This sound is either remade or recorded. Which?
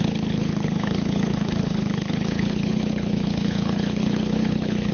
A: remade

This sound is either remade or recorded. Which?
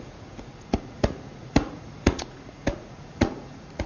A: remade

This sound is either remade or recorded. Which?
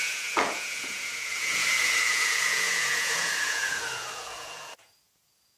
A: remade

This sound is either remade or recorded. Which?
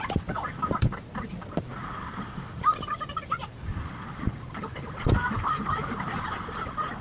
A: recorded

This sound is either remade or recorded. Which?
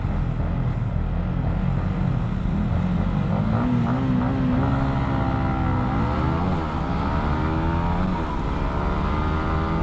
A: recorded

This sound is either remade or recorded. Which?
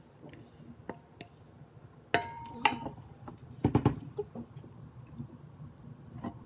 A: recorded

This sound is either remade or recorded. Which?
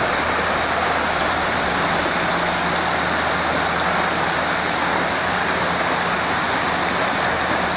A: recorded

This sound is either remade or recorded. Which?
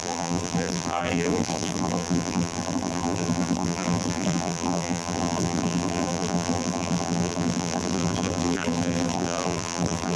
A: remade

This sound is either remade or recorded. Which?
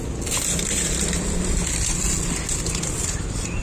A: recorded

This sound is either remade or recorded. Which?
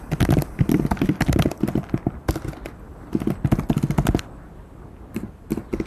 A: recorded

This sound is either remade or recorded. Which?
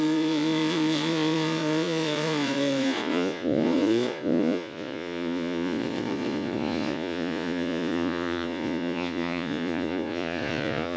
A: remade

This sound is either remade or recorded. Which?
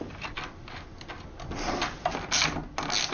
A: recorded